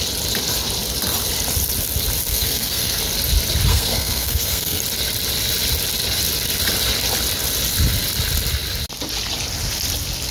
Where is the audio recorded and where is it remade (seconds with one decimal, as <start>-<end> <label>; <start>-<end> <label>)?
0.0-2.3 recorded; 2.3-3.0 remade; 3.0-3.7 recorded; 3.7-4.8 remade; 4.8-10.3 recorded